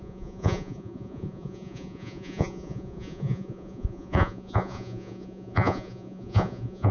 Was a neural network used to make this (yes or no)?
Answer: yes